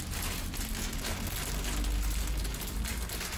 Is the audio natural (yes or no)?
yes